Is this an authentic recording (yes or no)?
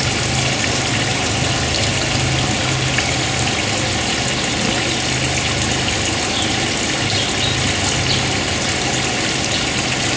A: yes